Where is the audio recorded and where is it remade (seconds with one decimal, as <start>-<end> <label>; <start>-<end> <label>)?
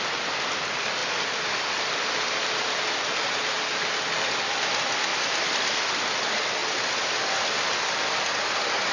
0.0-5.1 recorded; 5.1-5.8 remade; 5.8-8.9 recorded